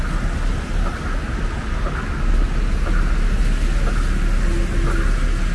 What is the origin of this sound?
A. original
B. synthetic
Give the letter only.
A